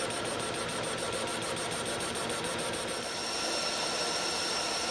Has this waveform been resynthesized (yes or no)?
yes